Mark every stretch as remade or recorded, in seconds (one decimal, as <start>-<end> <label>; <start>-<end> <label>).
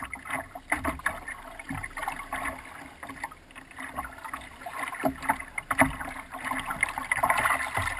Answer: 0.0-8.0 recorded